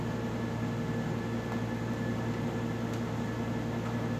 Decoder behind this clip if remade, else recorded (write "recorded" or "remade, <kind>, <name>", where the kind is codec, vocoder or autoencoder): recorded